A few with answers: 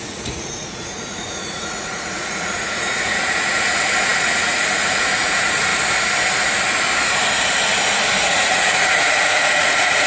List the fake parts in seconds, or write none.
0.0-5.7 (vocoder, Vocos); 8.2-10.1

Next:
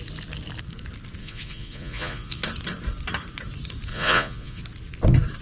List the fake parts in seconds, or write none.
1.2-2.4 (vocoder, Vocos); 3.9-4.6